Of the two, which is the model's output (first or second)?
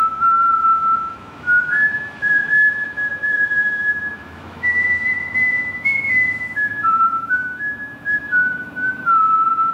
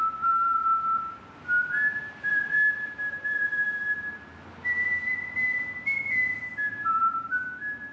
first